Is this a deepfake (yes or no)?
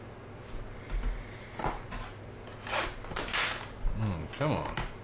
no